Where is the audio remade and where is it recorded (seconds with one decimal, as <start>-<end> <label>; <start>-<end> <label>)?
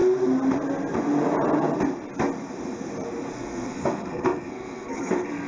0.0-3.3 recorded; 3.3-5.5 remade